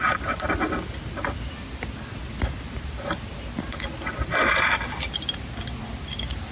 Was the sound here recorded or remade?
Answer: recorded